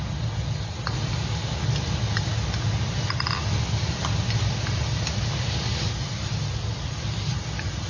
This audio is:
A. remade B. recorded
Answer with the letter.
B